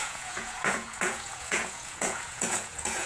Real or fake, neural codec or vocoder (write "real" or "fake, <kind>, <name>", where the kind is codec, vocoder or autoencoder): fake, vocoder, Vocos